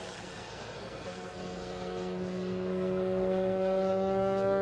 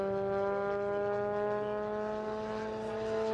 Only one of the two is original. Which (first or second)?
second